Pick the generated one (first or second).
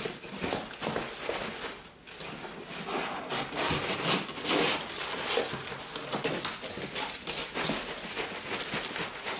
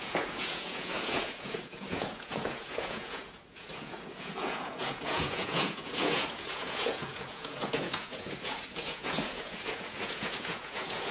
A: second